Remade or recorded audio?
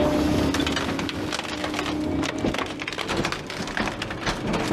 recorded